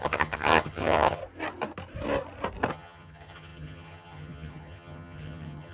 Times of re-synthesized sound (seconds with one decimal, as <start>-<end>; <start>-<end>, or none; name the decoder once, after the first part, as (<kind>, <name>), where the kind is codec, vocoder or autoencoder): 0.0-1.2 (vocoder, HiFi-GAN); 2.7-5.7